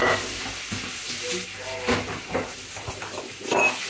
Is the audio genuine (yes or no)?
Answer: yes